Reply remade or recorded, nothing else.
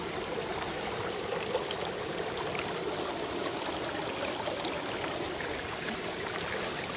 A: recorded